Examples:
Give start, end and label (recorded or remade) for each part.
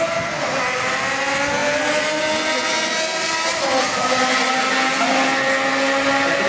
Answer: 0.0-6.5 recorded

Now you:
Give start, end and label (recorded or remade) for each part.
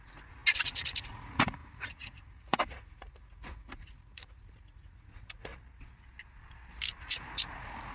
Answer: 0.0-5.5 remade; 5.5-7.0 recorded; 7.0-7.9 remade